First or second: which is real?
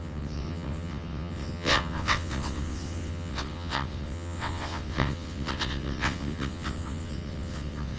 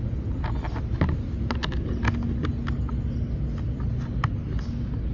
second